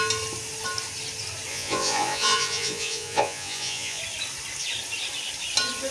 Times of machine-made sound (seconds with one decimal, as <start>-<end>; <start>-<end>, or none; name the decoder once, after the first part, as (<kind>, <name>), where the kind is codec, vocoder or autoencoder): 1.5-4.0 (vocoder, Vocos)